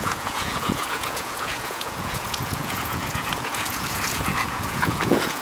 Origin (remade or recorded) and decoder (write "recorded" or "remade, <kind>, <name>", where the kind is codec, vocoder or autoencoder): remade, vocoder, Vocos